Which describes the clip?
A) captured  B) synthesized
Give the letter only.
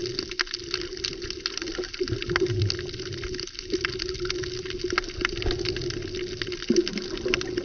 A